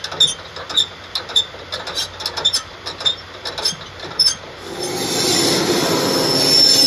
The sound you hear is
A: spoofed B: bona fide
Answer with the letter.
B